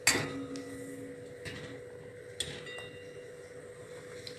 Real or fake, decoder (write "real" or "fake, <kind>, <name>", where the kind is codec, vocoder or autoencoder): real